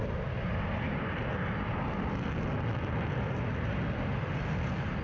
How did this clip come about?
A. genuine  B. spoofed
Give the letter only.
A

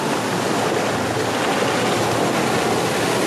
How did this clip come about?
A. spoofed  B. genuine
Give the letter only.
B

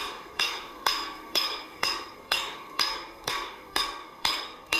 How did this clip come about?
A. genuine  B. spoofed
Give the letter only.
B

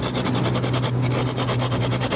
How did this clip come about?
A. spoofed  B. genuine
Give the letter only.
B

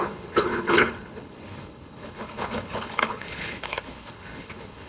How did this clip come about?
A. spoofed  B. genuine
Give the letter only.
A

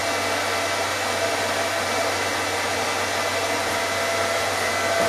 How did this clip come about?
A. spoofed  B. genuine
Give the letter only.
B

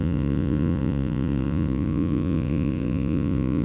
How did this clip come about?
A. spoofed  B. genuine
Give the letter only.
A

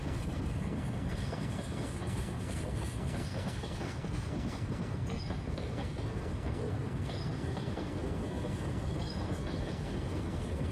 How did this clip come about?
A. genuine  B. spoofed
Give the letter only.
B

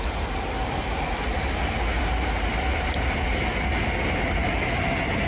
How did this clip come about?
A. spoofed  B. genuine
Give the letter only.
B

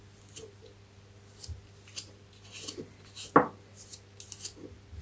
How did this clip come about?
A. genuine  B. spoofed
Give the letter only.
A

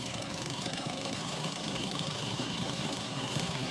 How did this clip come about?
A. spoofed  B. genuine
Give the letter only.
A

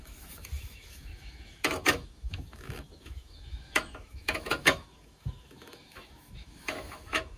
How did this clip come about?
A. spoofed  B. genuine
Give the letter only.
A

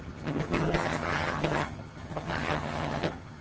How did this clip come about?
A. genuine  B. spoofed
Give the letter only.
B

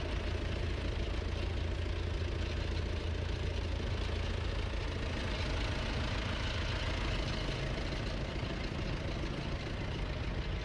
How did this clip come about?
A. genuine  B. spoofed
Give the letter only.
A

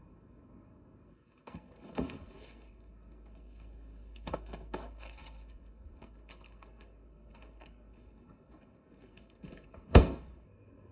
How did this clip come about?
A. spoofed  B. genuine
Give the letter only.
A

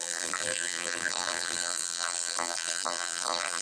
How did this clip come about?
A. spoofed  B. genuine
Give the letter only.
A